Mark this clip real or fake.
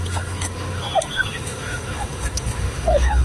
fake